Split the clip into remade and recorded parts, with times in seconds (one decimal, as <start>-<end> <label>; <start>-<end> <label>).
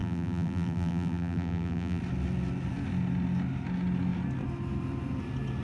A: 0.0-2.0 remade; 2.0-5.6 recorded